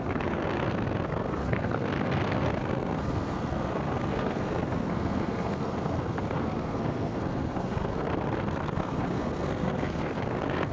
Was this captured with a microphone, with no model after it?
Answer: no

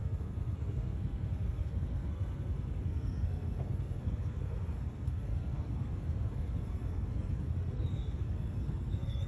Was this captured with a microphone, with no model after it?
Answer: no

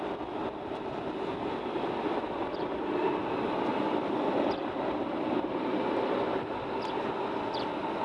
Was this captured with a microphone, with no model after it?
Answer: yes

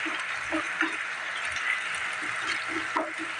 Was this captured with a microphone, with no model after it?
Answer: yes